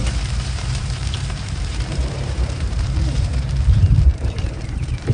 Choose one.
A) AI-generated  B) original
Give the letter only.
A